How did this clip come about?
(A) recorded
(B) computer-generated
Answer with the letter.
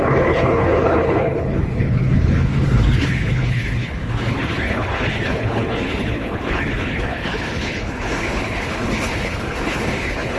B